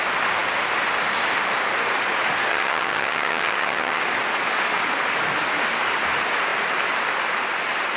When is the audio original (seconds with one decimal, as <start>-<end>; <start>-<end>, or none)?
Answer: 0.0-2.5; 4.0-8.0